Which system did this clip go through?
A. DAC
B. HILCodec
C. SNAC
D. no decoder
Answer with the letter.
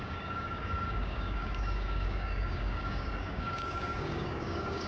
A